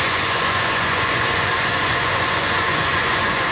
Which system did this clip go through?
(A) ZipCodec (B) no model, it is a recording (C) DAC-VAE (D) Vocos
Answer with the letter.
D